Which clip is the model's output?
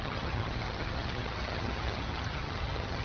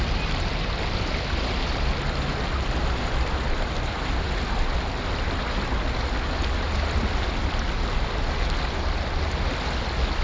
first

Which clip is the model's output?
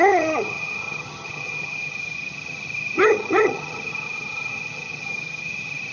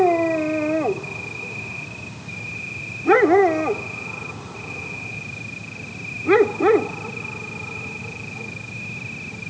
first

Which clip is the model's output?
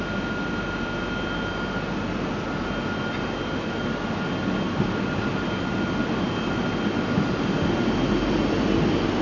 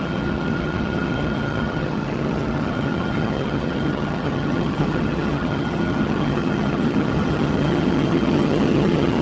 second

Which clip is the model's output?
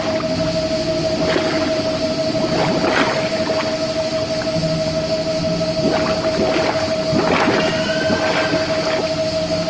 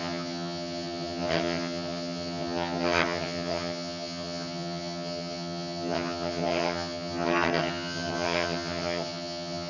second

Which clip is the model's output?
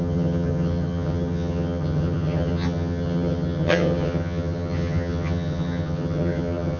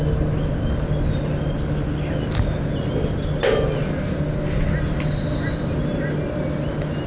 first